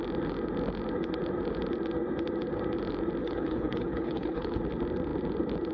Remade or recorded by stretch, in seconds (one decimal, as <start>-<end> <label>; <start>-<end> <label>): 0.0-3.2 recorded; 3.2-4.6 remade; 4.6-5.7 recorded